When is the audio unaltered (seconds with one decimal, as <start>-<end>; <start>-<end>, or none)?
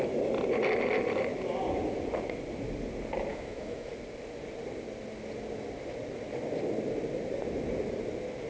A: 0.0-3.3; 3.9-8.5